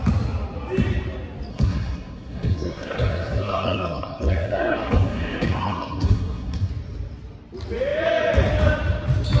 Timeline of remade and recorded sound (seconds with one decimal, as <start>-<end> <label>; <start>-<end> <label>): 0.0-1.5 recorded; 1.5-6.7 remade; 6.7-9.4 recorded